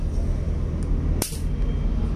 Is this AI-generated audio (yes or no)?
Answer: no